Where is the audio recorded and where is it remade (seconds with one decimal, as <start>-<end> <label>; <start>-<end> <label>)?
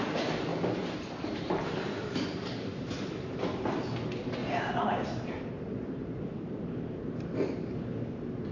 0.0-0.5 recorded; 0.5-3.1 remade; 3.1-4.4 recorded; 4.4-6.2 remade; 6.2-8.5 recorded